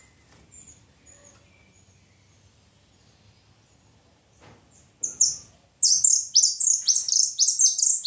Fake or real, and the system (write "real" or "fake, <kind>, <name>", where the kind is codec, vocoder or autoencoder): real